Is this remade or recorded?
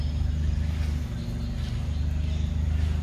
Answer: recorded